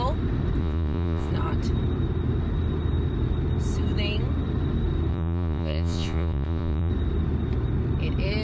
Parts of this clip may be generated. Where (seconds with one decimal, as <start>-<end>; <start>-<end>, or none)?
0.6-1.3; 5.1-6.9